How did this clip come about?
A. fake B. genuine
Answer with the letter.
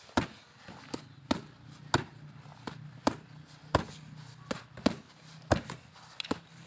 B